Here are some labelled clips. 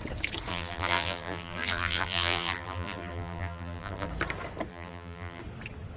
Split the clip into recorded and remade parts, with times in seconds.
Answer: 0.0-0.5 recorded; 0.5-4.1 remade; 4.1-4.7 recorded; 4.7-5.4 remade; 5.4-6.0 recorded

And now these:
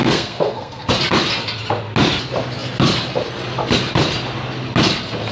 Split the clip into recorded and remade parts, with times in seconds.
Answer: 0.0-0.9 remade; 0.9-5.3 recorded